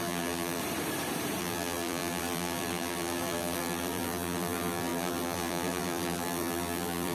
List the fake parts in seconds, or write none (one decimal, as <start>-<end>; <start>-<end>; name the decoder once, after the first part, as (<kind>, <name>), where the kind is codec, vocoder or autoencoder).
0.0-0.6 (vocoder, BigVGAN v2); 1.4-7.1